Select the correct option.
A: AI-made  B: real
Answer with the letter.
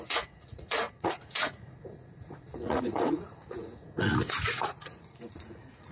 A